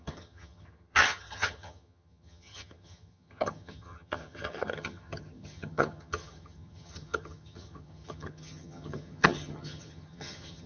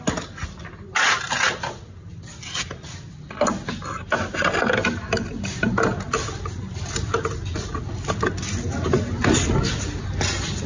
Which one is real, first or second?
second